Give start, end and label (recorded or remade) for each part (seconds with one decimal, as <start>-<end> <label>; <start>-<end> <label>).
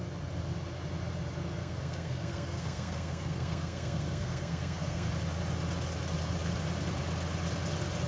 0.0-1.6 recorded; 1.6-5.1 remade; 5.1-8.1 recorded